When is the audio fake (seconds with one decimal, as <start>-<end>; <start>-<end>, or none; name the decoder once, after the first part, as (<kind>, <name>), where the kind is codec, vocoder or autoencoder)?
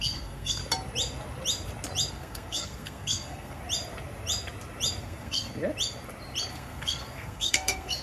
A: 0.0-0.6 (codec, SNAC); 2.1-3.6; 5.0-5.5; 6.5-8.0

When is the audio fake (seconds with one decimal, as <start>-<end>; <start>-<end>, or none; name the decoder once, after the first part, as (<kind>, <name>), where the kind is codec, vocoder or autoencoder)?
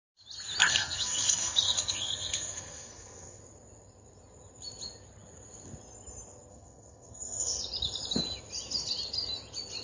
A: 0.7-3.4 (codec, SNAC); 6.5-7.6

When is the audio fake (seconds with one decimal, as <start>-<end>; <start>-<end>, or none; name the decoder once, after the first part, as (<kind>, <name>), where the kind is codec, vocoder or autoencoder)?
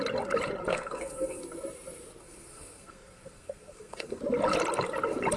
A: 0.7-1.4 (codec, SNAC); 2.2-4.2